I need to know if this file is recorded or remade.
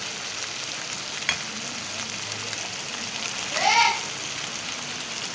recorded